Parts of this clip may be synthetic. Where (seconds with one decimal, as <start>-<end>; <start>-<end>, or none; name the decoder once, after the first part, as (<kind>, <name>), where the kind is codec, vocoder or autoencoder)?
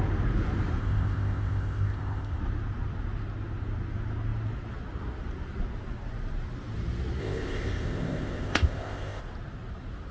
0.8-2.4 (codec, ZipCodec); 7.2-9.2